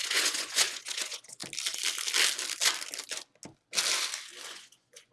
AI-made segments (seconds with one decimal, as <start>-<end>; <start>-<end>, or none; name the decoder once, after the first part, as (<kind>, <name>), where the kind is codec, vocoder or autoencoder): 0.0-1.4 (vocoder, Vocos); 4.5-5.1